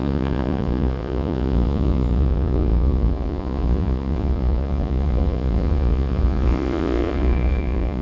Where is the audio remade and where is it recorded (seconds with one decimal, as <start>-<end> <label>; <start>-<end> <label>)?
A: 0.0-8.0 remade